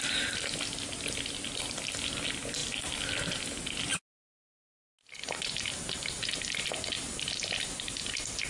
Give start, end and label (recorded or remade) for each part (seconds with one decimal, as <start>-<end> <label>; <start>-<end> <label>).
0.0-8.5 recorded